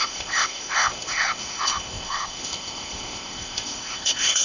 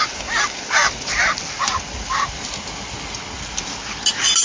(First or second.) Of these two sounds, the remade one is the first